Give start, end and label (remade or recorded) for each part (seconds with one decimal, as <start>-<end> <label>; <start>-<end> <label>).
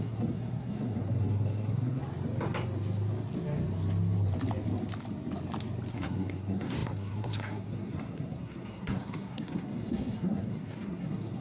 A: 0.0-2.0 remade; 2.0-5.9 recorded; 5.9-11.4 remade